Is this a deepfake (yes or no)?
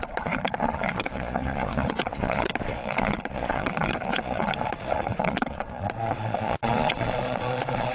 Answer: yes